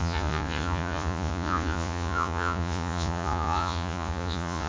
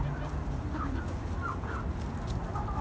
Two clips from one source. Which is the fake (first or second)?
first